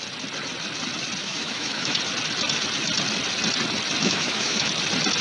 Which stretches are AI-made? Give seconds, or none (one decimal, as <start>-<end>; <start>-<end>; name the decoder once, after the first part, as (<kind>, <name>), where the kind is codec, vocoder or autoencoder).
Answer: 1.2-2.0 (autoencoder, DAC-VAE); 4.0-4.7